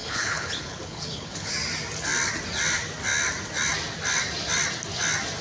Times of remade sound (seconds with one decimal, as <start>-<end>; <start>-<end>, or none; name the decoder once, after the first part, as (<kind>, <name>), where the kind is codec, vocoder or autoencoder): 0.0-1.5 (codec, HILCodec)